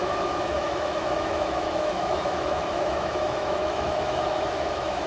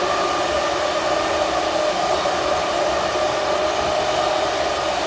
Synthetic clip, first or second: first